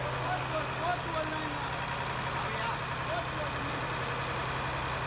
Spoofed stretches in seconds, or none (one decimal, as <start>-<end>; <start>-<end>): none